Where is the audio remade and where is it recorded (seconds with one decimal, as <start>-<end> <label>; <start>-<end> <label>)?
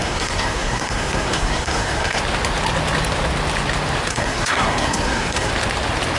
0.0-2.2 remade; 2.2-4.1 recorded; 4.1-5.5 remade; 5.5-6.2 recorded